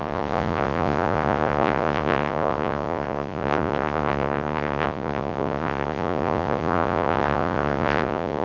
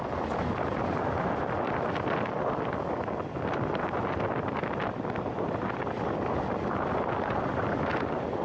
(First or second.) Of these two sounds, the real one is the second